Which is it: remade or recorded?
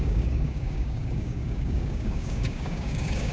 remade